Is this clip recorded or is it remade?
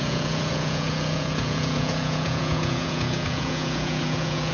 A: remade